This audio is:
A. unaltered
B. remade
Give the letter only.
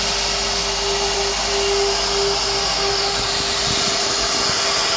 A